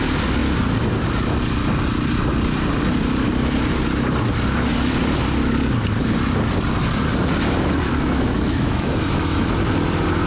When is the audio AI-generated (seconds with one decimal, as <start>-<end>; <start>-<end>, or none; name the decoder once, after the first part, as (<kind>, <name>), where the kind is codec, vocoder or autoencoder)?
7.9-9.5 (autoencoder, DAC-VAE)

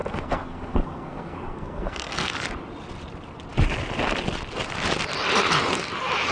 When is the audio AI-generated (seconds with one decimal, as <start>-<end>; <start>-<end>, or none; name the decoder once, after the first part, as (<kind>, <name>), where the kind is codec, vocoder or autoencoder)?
0.0-2.3 (codec, SNAC)

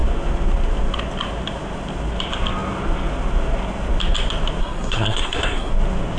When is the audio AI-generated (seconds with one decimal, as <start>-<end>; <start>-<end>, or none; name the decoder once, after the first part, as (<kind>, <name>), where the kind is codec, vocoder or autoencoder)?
4.6-5.7 (codec, SNAC)

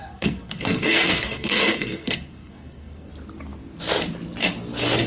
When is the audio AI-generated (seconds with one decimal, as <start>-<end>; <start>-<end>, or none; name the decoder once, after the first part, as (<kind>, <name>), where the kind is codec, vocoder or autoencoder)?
0.0-3.1 (codec, SNAC)